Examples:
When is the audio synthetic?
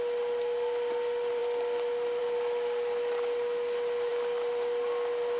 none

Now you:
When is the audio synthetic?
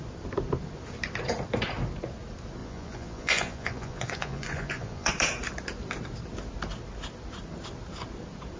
2.6-5.1 (vocoder, Vocos)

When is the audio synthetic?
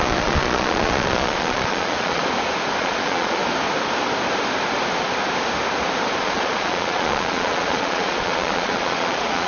0.0-2.2 (vocoder, Vocos); 2.8-3.4; 6.2-9.5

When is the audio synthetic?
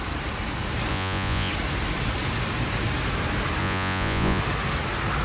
0.9-1.5 (vocoder, Vocos); 3.6-4.4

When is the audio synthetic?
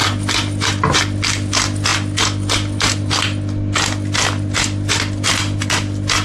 none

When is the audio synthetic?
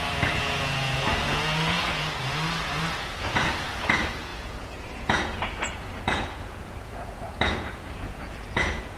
0.0-2.2 (vocoder, Vocos); 2.8-9.0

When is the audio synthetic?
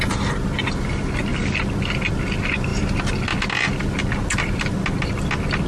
none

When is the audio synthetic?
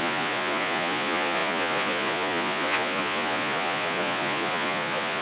0.0-5.2 (vocoder, Vocos)